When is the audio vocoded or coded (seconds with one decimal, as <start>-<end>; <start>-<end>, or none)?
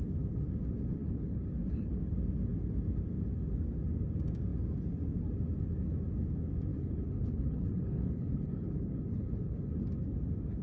1.0-2.0; 6.7-9.8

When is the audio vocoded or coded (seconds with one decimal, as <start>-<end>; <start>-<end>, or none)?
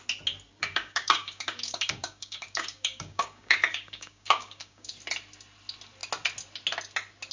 0.6-4.9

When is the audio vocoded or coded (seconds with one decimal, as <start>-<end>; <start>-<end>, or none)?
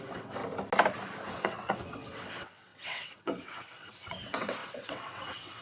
0.0-0.4; 1.3-5.6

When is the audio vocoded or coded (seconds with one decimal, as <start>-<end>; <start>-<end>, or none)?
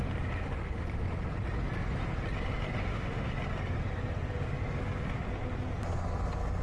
2.8-3.3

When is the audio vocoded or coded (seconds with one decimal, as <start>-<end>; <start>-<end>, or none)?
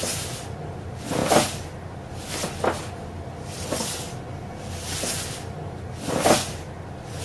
none